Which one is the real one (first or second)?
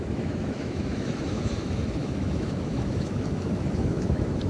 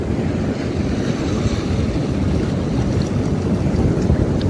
second